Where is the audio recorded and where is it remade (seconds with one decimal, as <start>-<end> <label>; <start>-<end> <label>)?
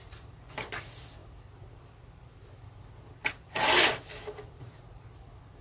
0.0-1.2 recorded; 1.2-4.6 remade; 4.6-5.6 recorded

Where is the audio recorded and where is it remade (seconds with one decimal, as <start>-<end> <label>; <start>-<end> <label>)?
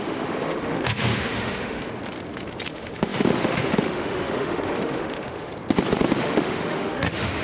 0.0-1.8 remade; 1.8-2.7 recorded; 2.7-5.5 remade; 5.5-6.2 recorded; 6.2-7.4 remade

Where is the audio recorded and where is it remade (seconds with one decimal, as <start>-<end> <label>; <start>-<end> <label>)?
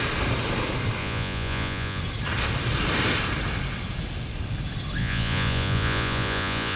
0.0-1.0 recorded; 1.0-2.0 remade; 2.0-5.0 recorded; 5.0-6.8 remade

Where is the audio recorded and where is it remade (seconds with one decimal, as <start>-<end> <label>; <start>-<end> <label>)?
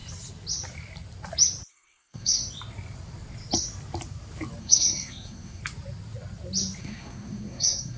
0.0-1.7 recorded; 1.7-2.4 remade; 2.4-4.6 recorded; 4.6-5.6 remade; 5.6-6.8 recorded; 6.8-8.0 remade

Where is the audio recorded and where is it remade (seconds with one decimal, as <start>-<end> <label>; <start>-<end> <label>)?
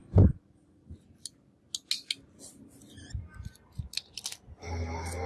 0.0-5.3 recorded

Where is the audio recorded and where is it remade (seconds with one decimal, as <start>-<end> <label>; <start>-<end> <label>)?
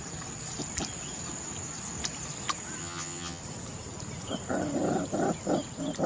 0.0-2.8 recorded; 2.8-3.4 remade; 3.4-6.1 recorded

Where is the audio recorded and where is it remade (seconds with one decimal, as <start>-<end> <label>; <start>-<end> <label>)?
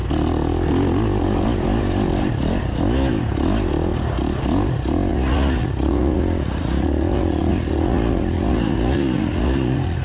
0.0-5.1 recorded; 5.1-10.0 remade